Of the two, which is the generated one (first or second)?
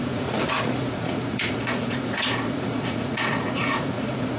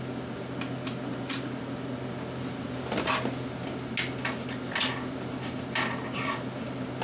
first